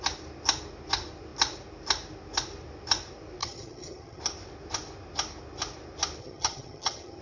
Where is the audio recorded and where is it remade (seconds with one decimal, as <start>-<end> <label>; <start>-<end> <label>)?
0.0-3.4 recorded; 3.4-4.2 remade; 4.2-6.2 recorded; 6.2-7.2 remade